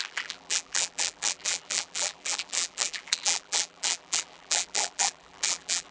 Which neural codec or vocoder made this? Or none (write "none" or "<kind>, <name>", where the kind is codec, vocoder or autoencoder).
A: vocoder, BigVGAN v2